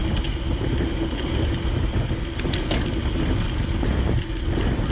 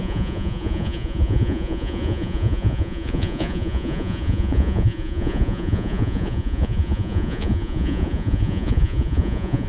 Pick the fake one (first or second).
second